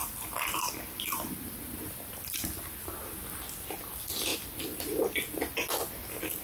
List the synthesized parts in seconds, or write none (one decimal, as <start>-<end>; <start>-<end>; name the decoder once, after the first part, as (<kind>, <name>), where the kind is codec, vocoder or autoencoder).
none